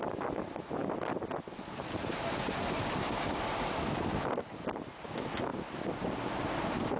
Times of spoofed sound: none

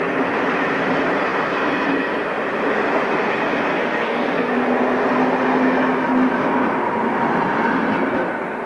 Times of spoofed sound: 3.7-4.5 (codec, SNAC)

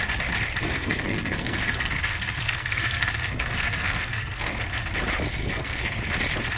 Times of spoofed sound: 0.6-4.6 (codec, SNAC); 5.4-6.0

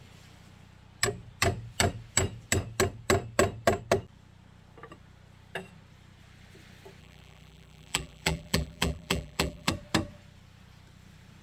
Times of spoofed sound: 7.0-9.7 (vocoder, BigVGAN v2)

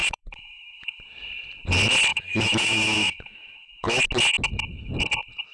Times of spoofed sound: 0.0-1.0 (autoencoder, DAC-VAE); 2.1-4.0

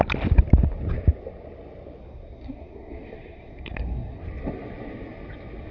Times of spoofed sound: 2.0-4.2 (codec, SNAC)

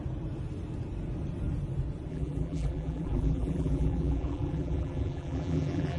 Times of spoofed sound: 2.1-6.0 (vocoder, BigVGAN v2)

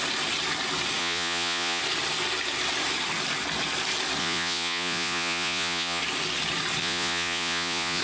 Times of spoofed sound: 1.0-1.8 (vocoder, Vocos); 4.2-6.0; 6.8-8.0